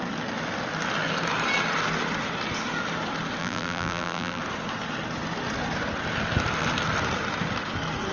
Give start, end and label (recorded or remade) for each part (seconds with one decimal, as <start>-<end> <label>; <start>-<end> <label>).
0.0-3.4 recorded; 3.4-4.4 remade; 4.4-8.1 recorded